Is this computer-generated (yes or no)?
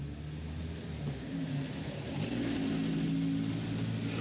no